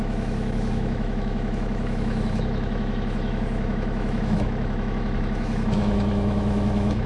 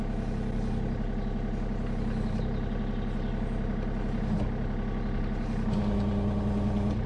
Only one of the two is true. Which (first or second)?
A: second